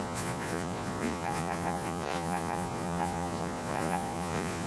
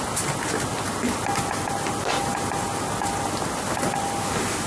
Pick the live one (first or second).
second